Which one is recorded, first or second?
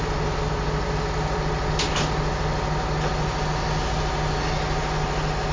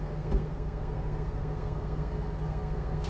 first